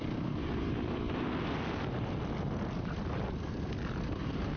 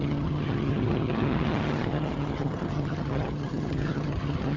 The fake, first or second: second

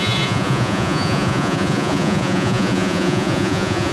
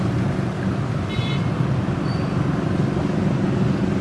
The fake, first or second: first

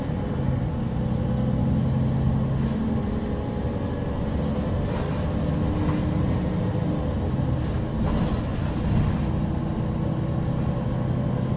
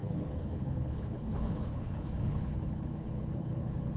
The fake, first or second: second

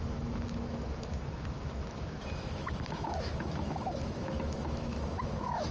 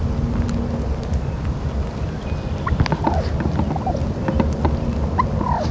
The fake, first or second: first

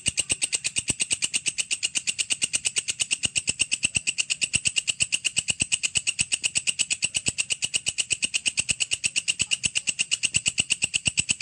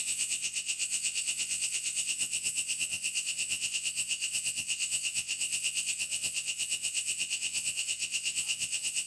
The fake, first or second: second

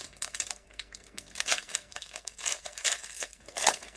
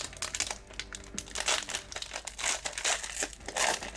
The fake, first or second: first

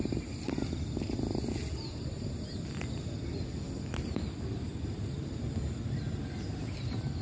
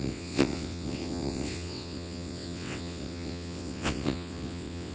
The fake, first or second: second